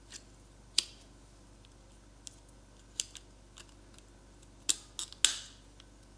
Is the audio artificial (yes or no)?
no